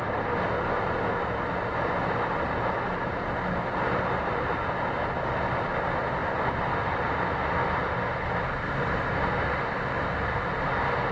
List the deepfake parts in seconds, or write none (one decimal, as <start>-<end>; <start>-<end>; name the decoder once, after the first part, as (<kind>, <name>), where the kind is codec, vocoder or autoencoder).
none